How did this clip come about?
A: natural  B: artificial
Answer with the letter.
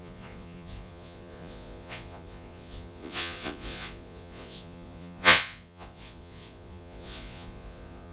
B